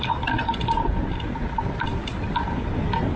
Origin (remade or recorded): recorded